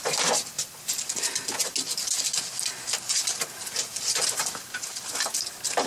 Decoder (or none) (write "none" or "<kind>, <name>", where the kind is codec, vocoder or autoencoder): none